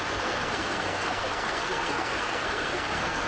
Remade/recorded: remade